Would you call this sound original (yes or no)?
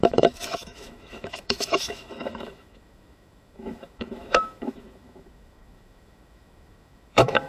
no